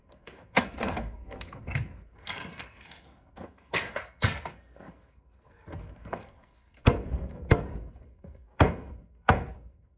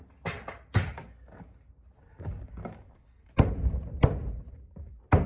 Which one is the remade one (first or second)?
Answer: first